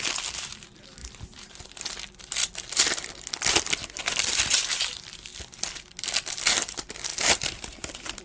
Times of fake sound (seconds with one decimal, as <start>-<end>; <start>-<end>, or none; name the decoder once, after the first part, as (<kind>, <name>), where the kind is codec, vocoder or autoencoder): 1.0-1.5 (vocoder, BigVGAN v2); 7.1-8.2